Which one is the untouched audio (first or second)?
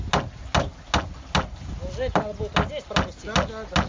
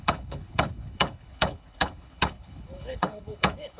first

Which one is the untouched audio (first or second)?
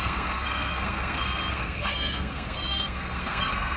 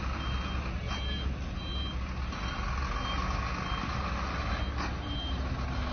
second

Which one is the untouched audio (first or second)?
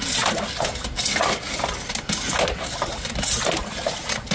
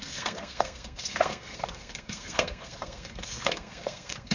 first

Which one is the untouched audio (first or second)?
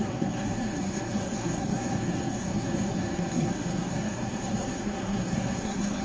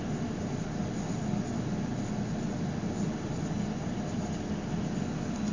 second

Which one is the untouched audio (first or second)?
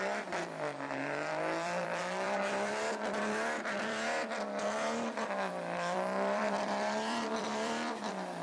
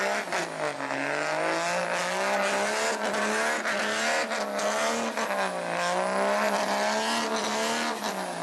second